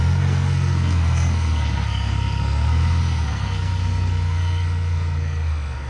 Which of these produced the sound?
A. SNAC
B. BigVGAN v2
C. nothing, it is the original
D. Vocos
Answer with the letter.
A